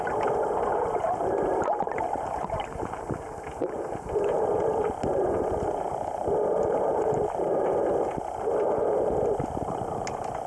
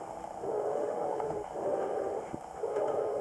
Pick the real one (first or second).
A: first